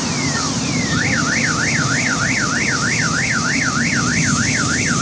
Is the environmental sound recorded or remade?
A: recorded